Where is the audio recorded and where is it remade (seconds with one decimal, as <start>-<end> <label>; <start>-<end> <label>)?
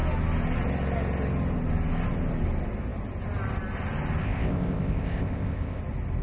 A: 0.0-4.2 recorded; 4.2-5.8 remade; 5.8-6.2 recorded